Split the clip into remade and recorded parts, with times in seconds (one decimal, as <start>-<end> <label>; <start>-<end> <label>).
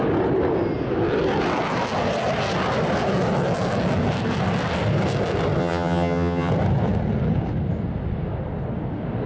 0.0-5.6 recorded; 5.6-6.5 remade; 6.5-9.3 recorded